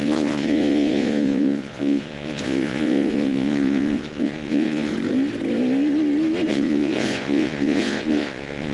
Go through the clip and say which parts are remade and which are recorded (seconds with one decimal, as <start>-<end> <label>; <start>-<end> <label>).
0.0-4.9 remade; 4.9-6.5 recorded; 6.5-8.7 remade